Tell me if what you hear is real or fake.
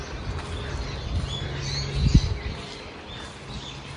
real